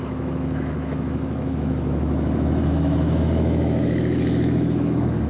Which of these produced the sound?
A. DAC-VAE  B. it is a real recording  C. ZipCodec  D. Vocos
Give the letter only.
A